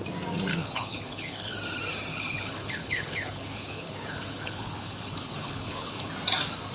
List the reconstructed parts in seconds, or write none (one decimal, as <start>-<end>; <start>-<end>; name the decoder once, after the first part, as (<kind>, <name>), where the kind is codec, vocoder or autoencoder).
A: 0.5-1.5 (codec, HILCodec); 2.1-6.1